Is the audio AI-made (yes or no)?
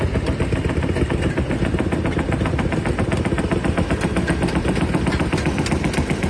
no